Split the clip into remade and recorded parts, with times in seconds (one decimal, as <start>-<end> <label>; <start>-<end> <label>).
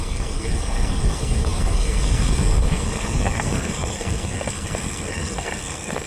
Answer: 0.0-6.1 remade